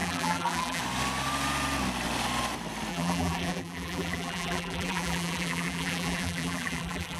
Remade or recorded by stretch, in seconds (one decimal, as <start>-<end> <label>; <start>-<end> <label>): 0.0-0.8 remade; 0.8-2.9 recorded; 2.9-7.2 remade